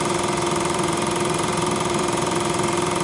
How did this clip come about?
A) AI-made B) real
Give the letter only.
A